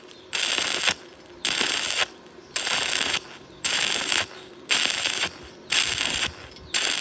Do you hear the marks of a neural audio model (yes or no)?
no